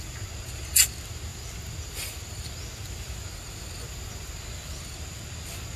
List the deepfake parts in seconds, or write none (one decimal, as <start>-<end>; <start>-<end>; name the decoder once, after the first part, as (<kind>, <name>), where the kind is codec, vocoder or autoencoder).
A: none